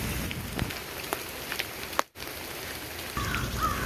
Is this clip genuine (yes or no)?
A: no